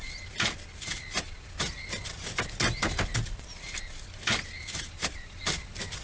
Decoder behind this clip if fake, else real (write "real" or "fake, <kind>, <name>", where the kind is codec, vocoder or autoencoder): real